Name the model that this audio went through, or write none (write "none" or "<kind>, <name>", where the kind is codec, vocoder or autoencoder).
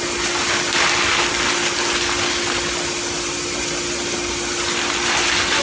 none